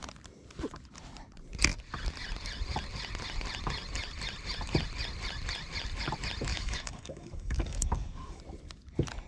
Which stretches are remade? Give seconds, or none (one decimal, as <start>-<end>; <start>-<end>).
6.5-8.4